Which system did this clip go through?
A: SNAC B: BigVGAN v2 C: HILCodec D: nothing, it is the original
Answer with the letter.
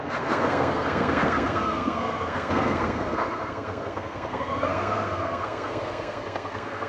A